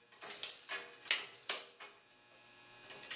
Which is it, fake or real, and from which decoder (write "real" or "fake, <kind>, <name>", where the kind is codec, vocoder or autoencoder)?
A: fake, vocoder, BigVGAN v2